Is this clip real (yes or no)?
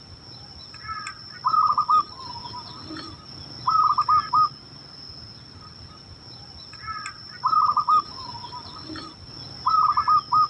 yes